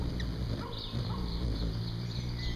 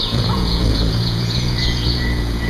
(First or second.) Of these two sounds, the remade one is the second